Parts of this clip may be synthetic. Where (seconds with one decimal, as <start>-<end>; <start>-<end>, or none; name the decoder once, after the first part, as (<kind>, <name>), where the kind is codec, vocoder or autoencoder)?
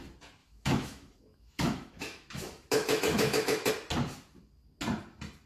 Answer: 0.4-3.7 (autoencoder, DAC-VAE)